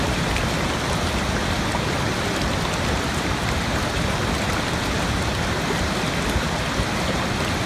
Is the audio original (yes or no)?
yes